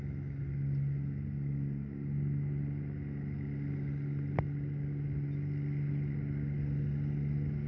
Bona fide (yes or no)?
yes